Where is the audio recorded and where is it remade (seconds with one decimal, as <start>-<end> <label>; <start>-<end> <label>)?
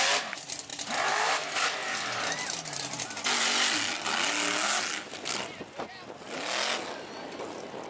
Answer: 0.0-7.9 recorded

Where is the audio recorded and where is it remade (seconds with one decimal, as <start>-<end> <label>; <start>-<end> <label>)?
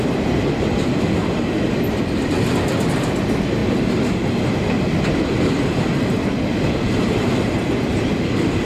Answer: 0.0-8.7 recorded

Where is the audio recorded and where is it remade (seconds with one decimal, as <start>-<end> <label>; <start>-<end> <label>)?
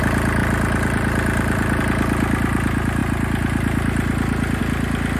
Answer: 0.0-0.4 recorded; 0.4-1.8 remade; 1.8-5.2 recorded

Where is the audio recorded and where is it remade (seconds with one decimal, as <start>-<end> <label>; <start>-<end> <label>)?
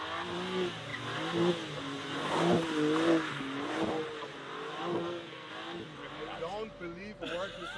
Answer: 0.0-4.9 recorded; 4.9-5.5 remade; 5.5-7.8 recorded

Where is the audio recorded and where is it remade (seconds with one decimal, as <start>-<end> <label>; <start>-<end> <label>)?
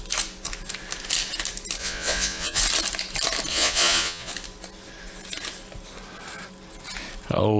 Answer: 0.0-1.8 recorded; 1.8-2.6 remade; 2.6-3.5 recorded; 3.5-4.3 remade; 4.3-7.6 recorded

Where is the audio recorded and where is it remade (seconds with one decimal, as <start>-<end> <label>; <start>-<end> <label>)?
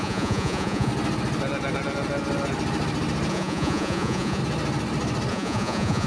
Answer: 0.0-0.9 remade; 0.9-3.3 recorded; 3.3-4.4 remade; 4.4-5.3 recorded; 5.3-6.1 remade